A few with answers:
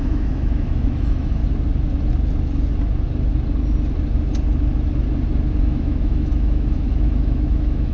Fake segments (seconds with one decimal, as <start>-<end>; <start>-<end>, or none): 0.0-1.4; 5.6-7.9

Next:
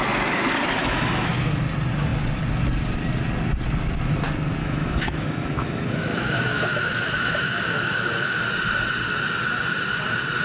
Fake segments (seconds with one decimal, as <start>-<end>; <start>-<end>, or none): 0.8-1.3; 4.6-8.4

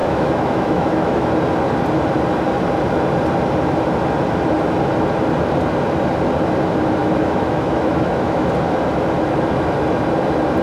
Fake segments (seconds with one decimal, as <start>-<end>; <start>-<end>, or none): 0.0-1.3; 7.0-8.5

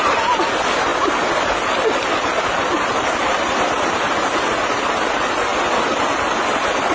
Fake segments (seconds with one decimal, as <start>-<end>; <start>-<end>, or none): none